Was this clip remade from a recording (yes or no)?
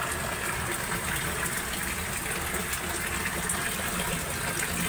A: no